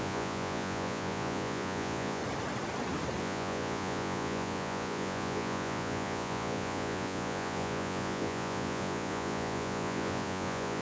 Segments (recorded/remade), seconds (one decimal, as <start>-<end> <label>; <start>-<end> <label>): 0.0-2.2 remade; 2.2-3.2 recorded; 3.2-10.8 remade